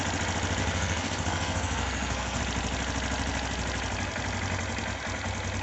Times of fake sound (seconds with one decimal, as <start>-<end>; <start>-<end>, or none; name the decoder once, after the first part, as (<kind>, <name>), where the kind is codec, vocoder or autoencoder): 0.6-2.4 (codec, SNAC)